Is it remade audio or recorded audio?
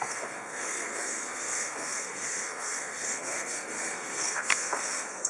remade